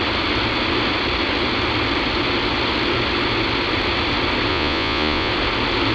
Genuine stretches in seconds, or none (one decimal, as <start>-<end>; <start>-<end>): 0.0-4.5; 5.3-5.9